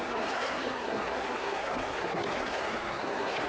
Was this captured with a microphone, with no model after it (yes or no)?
no